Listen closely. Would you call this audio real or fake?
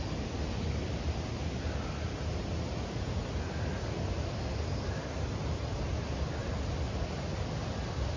real